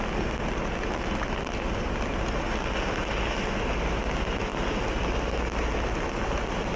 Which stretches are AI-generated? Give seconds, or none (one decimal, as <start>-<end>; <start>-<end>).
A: none